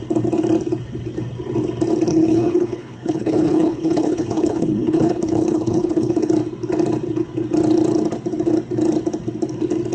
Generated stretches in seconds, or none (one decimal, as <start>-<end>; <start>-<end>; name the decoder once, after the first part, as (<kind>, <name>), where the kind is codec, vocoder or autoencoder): 2.1-6.3 (codec, HILCodec)